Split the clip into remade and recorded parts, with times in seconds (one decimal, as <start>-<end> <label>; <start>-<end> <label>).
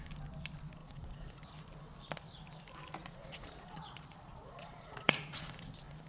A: 0.0-0.8 recorded; 0.8-1.4 remade; 1.4-3.0 recorded; 3.0-5.1 remade; 5.1-6.1 recorded